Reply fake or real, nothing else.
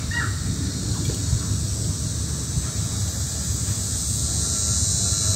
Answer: real